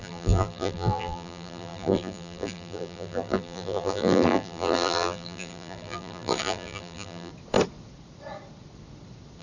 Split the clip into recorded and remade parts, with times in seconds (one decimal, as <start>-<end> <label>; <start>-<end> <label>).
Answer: 0.0-7.3 remade; 7.3-9.4 recorded